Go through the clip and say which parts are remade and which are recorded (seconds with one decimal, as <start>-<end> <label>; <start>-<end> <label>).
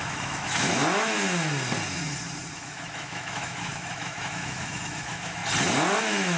0.0-0.8 remade; 0.8-2.5 recorded; 2.5-5.4 remade; 5.4-6.0 recorded; 6.0-6.4 remade